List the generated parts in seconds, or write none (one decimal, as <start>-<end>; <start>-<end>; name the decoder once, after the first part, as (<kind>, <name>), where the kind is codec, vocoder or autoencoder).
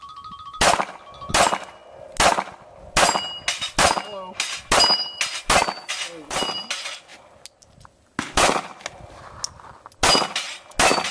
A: none